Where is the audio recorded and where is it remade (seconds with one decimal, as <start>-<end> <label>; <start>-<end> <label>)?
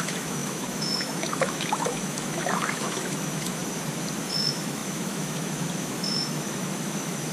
0.0-3.6 remade; 3.6-4.2 recorded; 4.2-7.3 remade